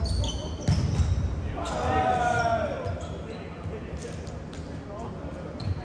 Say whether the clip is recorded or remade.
recorded